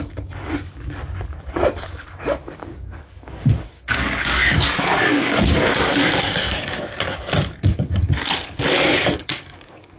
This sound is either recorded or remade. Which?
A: remade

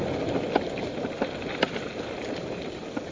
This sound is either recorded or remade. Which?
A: recorded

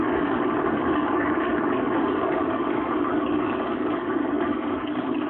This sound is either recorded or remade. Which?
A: remade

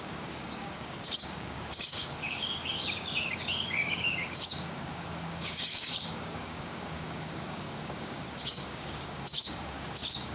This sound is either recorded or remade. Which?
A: remade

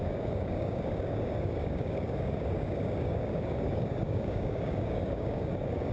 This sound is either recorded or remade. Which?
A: remade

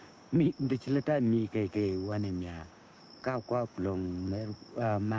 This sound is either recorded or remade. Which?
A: remade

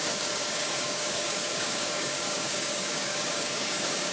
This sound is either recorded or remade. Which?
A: remade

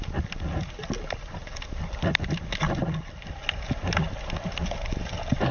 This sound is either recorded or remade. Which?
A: recorded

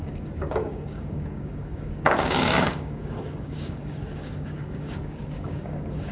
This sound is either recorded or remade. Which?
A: remade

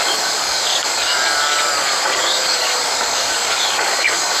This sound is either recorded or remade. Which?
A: remade